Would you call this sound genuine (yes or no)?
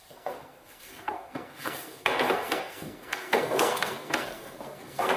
no